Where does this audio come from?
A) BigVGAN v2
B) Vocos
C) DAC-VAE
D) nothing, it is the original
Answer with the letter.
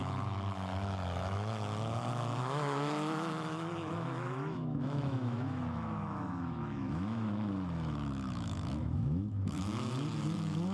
C